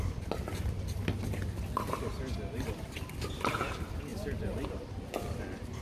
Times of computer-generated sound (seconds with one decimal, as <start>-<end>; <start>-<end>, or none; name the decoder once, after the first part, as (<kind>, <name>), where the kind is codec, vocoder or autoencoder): none